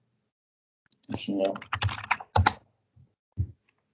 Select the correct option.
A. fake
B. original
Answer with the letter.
B